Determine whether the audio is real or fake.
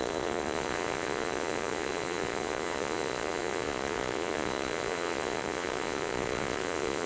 fake